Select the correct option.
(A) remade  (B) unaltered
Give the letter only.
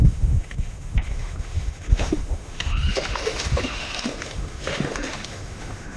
A